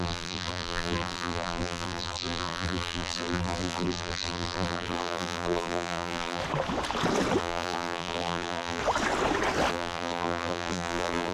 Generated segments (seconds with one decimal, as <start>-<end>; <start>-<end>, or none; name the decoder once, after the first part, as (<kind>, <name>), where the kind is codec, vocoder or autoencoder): 0.0-6.4 (vocoder, BigVGAN v2); 7.4-8.8; 9.7-11.3